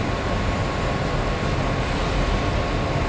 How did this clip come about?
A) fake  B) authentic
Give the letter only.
B